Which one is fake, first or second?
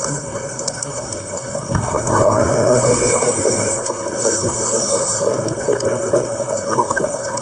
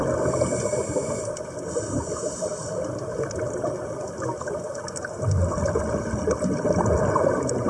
first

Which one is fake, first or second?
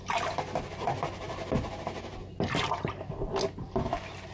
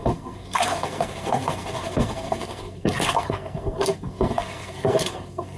second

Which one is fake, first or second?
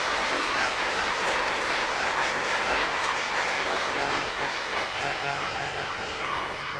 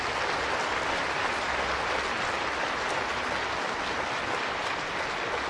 first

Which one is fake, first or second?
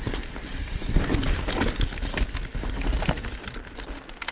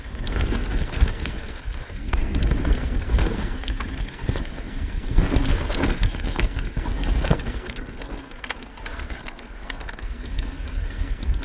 second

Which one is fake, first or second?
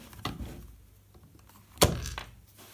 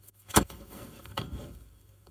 second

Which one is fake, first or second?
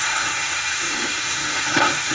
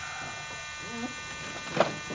first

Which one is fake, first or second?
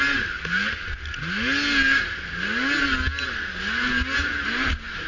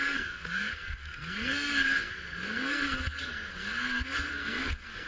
second